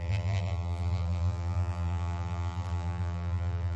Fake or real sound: fake